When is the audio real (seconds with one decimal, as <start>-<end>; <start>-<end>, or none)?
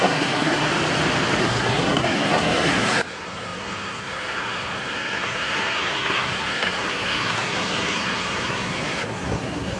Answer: 0.7-1.4